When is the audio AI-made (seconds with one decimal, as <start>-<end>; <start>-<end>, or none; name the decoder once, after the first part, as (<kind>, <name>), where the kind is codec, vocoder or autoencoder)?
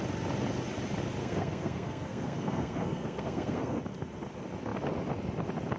1.2-3.8 (codec, SNAC)